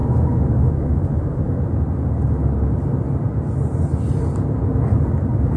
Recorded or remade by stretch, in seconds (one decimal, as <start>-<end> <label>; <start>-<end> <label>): 0.0-1.4 remade; 1.4-5.6 recorded